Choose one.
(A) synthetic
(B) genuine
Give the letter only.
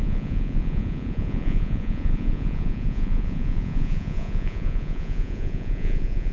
A